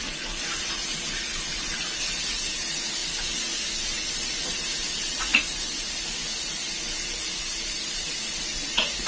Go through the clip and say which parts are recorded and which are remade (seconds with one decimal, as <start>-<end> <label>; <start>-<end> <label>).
0.0-9.1 remade